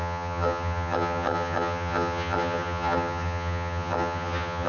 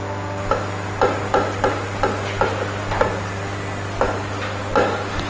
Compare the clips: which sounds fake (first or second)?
first